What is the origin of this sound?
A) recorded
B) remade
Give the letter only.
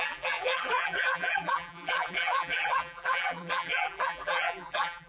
B